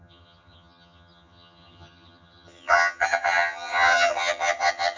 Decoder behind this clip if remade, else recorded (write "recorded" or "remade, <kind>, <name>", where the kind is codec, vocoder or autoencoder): remade, vocoder, HiFi-GAN